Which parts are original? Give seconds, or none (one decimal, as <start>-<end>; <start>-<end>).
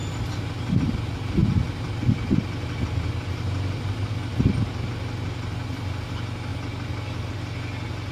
0.0-8.1